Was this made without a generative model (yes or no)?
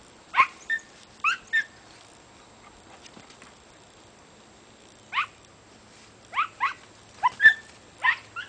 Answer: yes